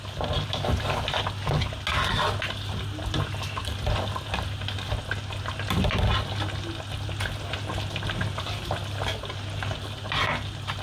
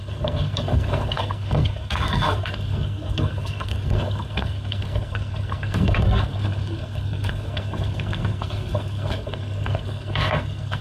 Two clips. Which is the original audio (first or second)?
first